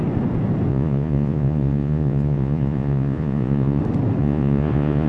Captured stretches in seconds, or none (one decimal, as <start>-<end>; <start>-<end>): 0.0-0.7; 3.8-4.2